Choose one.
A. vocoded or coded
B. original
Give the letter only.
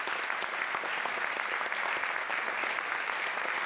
B